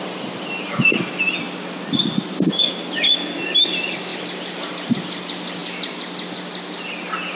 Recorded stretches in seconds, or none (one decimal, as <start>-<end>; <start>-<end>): 0.0-7.4